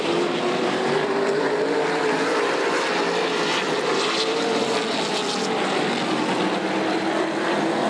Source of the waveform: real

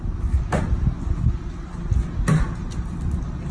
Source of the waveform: real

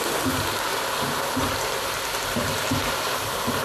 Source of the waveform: real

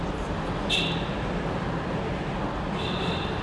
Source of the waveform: real